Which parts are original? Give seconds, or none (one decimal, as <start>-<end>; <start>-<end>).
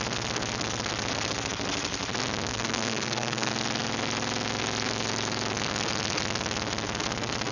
0.0-2.5; 3.5-7.5